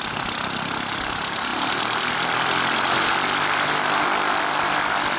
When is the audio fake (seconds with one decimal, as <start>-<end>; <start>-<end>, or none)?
none

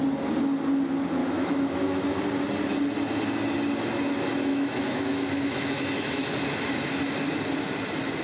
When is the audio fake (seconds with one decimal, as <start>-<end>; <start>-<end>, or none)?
1.2-2.2; 4.5-6.3

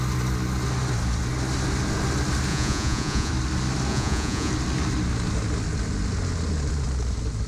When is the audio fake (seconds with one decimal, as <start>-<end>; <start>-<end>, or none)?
2.5-3.3; 3.9-4.5

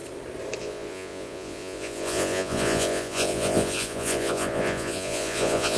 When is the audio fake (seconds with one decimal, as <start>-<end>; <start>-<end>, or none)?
0.6-5.8

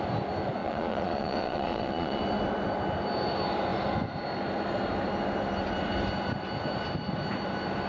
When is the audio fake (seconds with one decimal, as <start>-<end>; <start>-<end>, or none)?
0.6-2.2